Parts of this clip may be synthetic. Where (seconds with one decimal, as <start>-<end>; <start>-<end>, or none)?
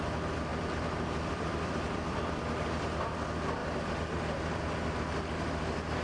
0.5-2.4; 3.6-4.6